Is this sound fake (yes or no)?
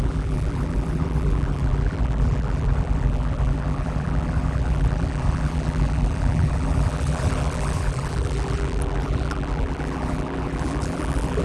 yes